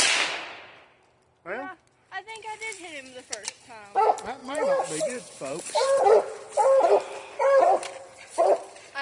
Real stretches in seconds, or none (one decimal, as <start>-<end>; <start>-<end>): 0.0-4.4; 6.0-9.0